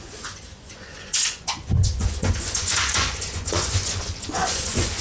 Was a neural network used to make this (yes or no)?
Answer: yes